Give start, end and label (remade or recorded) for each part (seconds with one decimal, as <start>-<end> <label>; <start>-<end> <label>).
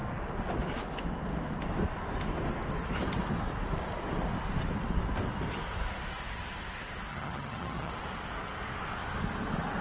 0.0-7.1 recorded; 7.1-7.9 remade; 7.9-9.8 recorded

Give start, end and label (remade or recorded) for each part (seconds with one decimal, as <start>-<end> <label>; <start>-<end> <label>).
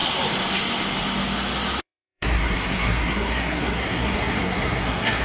0.0-1.8 recorded; 1.8-5.2 remade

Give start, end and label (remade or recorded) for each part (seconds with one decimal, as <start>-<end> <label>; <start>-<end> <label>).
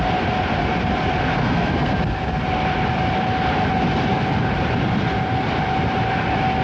0.0-1.4 recorded; 1.4-2.0 remade; 2.0-6.6 recorded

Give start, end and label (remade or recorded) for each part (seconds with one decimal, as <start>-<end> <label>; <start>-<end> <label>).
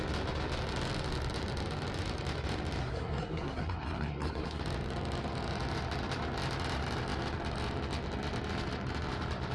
0.0-2.8 recorded; 2.8-4.6 remade; 4.6-9.5 recorded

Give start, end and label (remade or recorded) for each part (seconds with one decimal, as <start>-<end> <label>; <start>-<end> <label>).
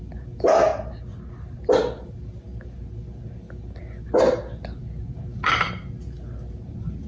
0.0-7.1 recorded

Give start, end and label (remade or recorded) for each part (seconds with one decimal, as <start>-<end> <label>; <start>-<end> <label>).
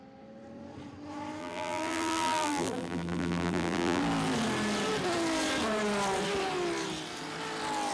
0.0-1.4 recorded; 1.4-4.0 remade; 4.0-7.9 recorded